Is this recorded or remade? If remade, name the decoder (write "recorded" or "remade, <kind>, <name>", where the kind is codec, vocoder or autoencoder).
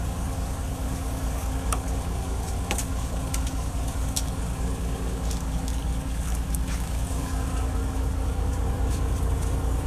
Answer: remade, codec, DAC